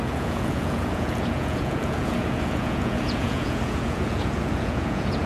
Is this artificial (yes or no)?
yes